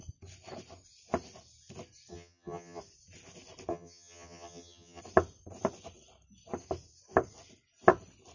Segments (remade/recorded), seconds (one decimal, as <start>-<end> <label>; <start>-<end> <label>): 0.0-2.1 recorded; 2.1-2.8 remade; 2.8-3.7 recorded; 3.7-5.0 remade; 5.0-8.3 recorded